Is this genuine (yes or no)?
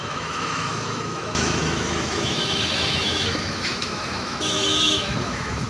no